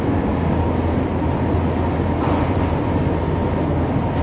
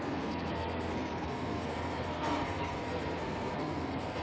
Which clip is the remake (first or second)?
second